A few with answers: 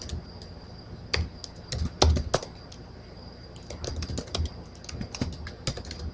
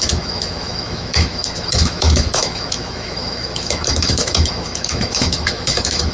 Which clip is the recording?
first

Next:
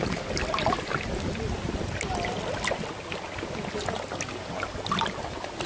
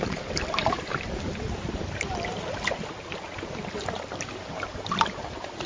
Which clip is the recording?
first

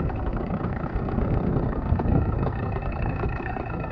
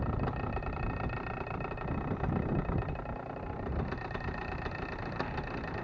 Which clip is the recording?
second